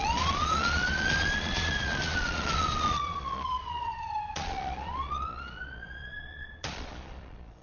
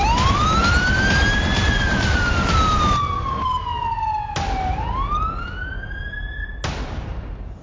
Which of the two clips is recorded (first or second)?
second